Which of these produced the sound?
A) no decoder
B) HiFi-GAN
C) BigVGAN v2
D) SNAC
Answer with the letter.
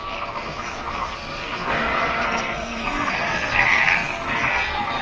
D